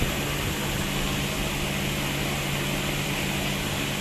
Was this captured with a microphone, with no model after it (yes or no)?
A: yes